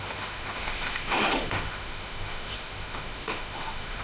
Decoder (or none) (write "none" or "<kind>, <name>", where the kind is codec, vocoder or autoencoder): autoencoder, DAC-VAE